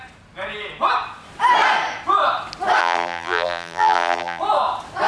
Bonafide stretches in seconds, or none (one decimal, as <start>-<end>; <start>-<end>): 0.0-2.8; 4.4-5.1